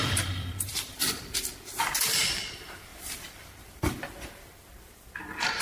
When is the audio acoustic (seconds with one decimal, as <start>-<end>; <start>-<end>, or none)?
0.0-0.7; 1.4-2.9; 4.5-5.6